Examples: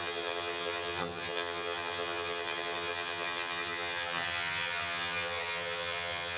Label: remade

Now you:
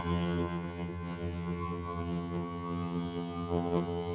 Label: remade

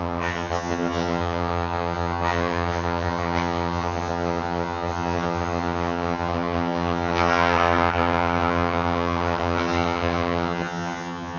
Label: remade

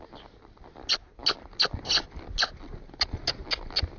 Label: recorded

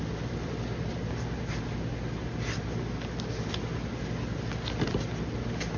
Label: recorded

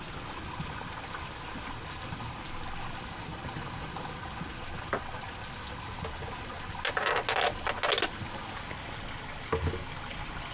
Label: recorded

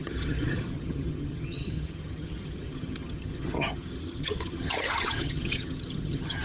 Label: remade